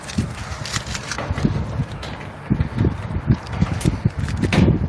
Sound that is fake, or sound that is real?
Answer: real